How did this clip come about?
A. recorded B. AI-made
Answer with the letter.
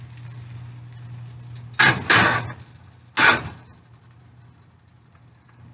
A